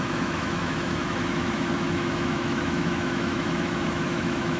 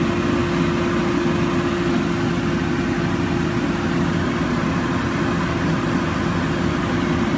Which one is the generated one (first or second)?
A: first